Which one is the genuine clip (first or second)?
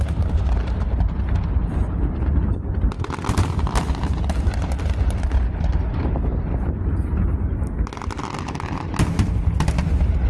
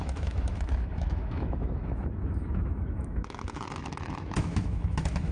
first